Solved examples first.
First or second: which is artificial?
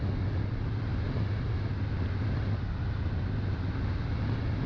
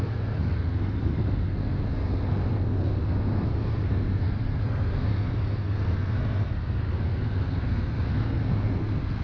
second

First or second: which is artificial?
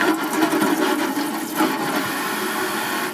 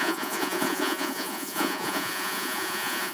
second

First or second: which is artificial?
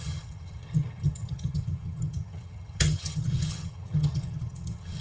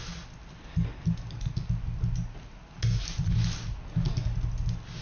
first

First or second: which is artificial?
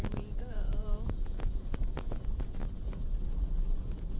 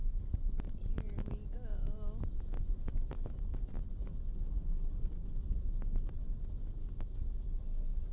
first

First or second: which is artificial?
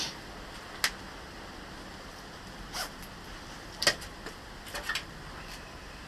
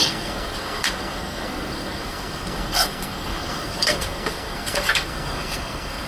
second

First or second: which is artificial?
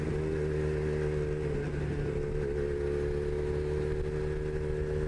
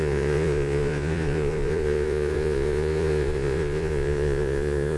second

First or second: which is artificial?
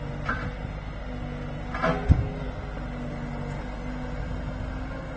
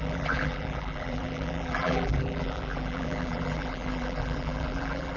second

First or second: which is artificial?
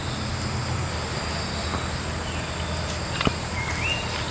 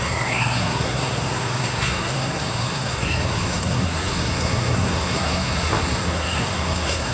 second